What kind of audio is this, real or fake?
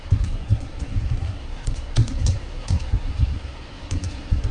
fake